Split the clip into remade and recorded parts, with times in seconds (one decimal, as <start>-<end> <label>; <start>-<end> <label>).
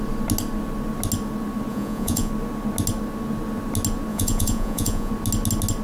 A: 0.0-1.7 recorded; 1.7-2.3 remade; 2.3-4.1 recorded; 4.1-5.1 remade; 5.1-5.8 recorded